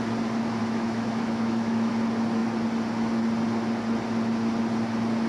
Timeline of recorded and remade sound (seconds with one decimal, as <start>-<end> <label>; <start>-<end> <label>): 0.0-0.6 recorded; 0.6-1.9 remade; 1.9-5.3 recorded